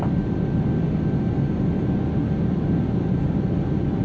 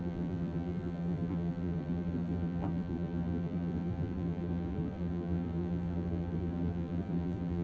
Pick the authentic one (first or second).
first